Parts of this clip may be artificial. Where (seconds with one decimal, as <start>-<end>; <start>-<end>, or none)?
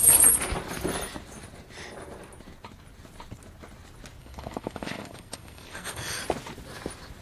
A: 4.2-6.2